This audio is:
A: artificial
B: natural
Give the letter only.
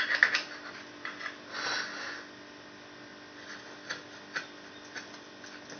B